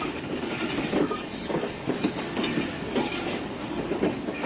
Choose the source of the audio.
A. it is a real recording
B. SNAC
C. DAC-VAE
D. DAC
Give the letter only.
D